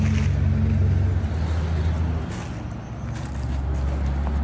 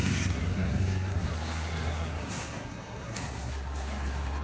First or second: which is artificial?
second